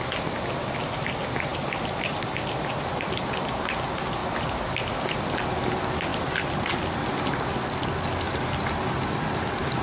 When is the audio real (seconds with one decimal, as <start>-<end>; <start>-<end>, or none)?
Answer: 0.0-1.5; 2.7-6.1; 7.6-9.8